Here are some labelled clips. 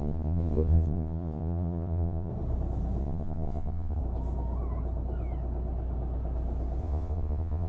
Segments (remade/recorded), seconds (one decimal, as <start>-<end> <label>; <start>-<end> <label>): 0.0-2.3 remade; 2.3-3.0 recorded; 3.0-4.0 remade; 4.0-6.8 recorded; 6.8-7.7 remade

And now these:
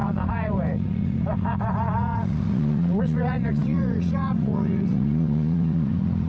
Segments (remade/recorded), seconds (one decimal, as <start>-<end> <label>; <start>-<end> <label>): 0.0-6.3 remade

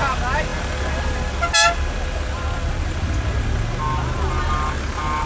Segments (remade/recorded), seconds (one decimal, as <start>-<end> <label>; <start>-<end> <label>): 0.0-5.3 recorded